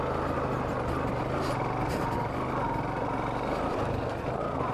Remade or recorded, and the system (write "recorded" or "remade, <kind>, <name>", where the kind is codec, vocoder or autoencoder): recorded